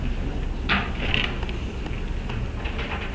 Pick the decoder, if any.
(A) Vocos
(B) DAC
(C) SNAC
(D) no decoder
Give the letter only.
D